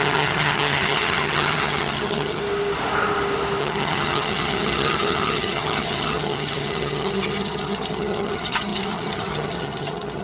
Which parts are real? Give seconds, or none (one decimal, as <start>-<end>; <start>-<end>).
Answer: 2.4-3.6